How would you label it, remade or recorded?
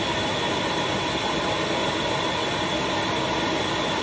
recorded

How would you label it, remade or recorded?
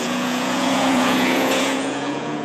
remade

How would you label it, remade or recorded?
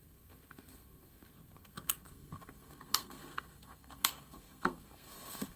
remade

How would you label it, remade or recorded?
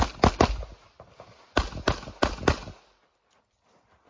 recorded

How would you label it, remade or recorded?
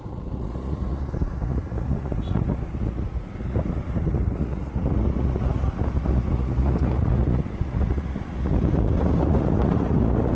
remade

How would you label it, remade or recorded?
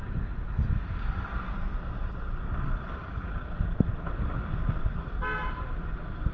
recorded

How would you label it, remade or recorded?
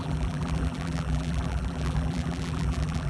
remade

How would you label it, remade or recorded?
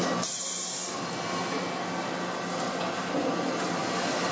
recorded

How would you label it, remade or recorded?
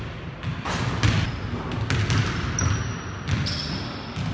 recorded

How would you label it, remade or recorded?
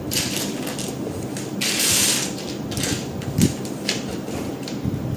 recorded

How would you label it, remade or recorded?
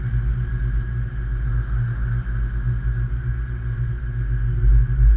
recorded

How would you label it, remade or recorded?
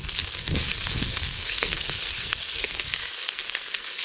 remade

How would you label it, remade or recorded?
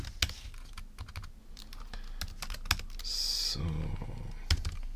recorded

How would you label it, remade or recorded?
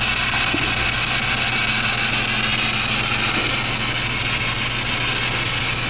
recorded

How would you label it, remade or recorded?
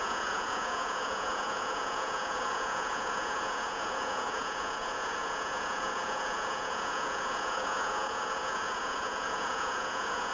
remade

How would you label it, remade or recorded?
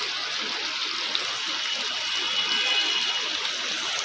recorded